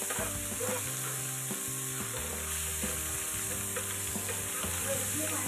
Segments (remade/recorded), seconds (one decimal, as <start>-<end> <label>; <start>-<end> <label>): 0.0-5.5 recorded

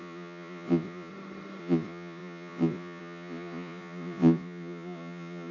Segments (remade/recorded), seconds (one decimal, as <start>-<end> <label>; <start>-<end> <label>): 0.0-1.1 remade; 1.1-1.6 recorded; 1.6-5.5 remade

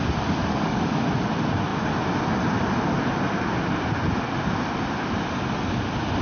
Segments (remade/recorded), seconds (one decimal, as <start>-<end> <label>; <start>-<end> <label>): 0.0-0.4 recorded; 0.4-0.9 remade; 0.9-6.2 recorded

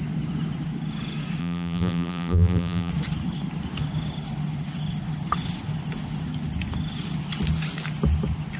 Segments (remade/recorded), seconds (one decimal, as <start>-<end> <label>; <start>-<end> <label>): 0.0-1.4 recorded; 1.4-2.9 remade; 2.9-8.6 recorded

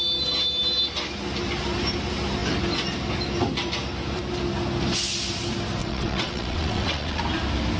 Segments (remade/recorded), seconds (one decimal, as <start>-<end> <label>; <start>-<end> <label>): 0.0-5.8 recorded; 5.8-7.2 remade; 7.2-7.8 recorded

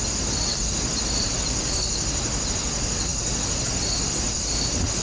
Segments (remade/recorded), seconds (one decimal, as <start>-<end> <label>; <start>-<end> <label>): 0.0-5.0 recorded

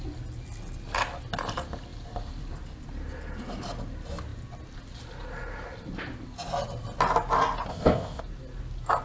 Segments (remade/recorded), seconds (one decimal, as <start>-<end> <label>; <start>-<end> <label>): 0.0-7.7 recorded; 7.7-8.2 remade; 8.2-9.0 recorded

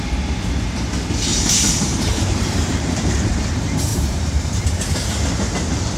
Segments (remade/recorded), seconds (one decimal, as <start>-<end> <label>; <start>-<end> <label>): 0.0-1.3 recorded; 1.3-3.3 remade; 3.3-3.9 recorded; 3.9-4.6 remade; 4.6-6.0 recorded